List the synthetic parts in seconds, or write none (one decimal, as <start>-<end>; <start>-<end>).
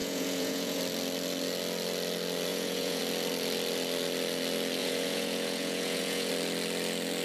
0.0-0.8; 2.5-3.0; 4.8-6.3